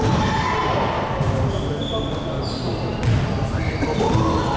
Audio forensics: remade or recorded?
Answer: recorded